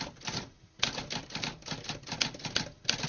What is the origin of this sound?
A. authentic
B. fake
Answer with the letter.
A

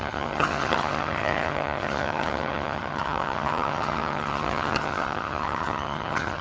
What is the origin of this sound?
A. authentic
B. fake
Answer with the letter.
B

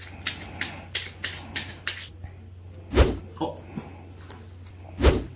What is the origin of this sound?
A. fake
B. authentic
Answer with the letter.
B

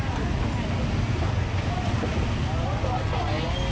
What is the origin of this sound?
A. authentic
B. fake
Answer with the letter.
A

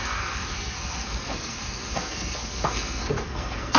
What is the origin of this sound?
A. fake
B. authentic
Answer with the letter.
A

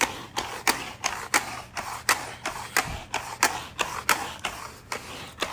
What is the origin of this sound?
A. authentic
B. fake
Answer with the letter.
A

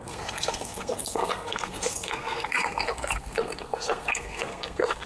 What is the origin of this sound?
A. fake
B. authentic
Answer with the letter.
A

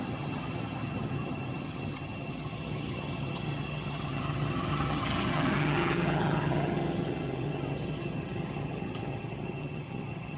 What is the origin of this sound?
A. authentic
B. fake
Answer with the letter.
B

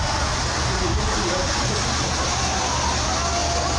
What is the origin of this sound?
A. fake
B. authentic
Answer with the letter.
B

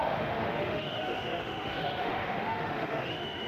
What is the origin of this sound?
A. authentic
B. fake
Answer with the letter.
B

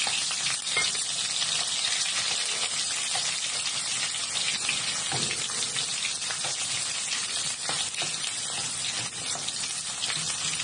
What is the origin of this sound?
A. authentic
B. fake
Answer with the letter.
A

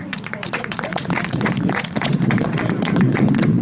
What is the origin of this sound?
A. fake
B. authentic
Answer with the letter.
A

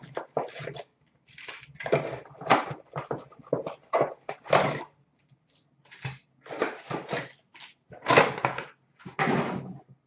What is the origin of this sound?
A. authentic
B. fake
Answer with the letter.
A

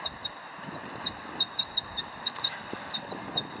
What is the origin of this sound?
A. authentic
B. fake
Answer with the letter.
A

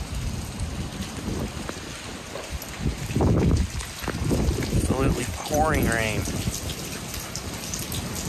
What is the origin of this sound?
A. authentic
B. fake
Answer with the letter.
A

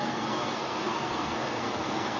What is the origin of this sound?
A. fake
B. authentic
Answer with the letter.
A